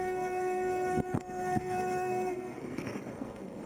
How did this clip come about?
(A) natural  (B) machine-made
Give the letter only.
B